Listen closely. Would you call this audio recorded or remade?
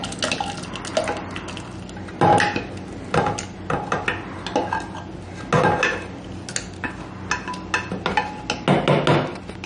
recorded